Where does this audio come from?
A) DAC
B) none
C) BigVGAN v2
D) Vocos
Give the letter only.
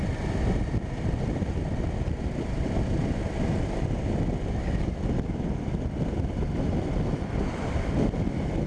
B